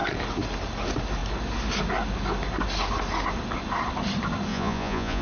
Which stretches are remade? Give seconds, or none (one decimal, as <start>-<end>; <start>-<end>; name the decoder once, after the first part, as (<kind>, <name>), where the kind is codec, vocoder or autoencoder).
4.5-5.2 (vocoder, Vocos)